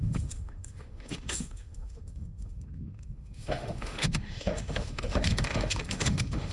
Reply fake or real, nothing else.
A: fake